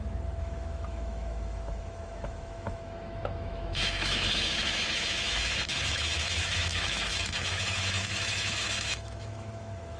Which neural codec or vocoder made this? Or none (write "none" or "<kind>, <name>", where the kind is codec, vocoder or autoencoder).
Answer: autoencoder, DAC-VAE